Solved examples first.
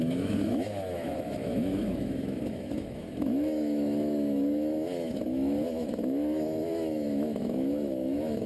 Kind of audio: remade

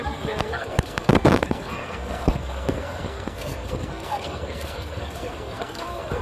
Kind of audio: remade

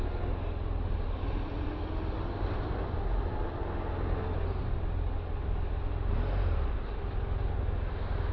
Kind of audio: recorded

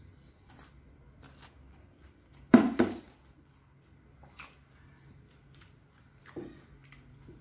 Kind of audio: recorded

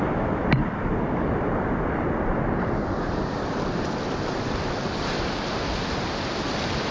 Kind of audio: recorded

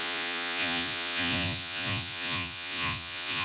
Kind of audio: remade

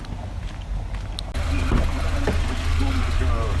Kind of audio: recorded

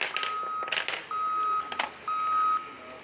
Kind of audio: recorded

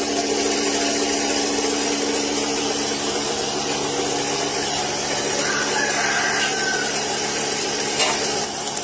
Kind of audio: recorded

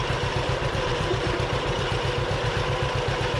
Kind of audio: recorded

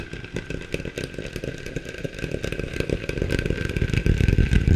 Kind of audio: recorded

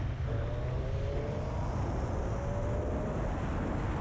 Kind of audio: recorded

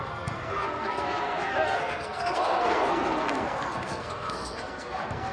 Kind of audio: remade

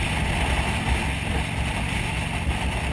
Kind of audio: recorded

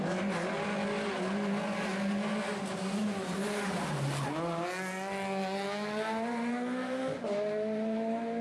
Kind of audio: recorded